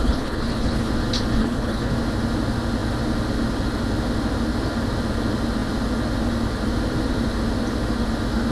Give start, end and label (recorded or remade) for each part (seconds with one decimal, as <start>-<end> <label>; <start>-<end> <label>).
0.0-0.9 remade; 0.9-1.4 recorded; 1.4-1.9 remade; 1.9-8.5 recorded